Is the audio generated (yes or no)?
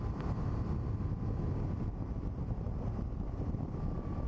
no